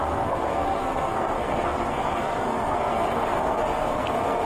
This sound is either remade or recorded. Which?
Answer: remade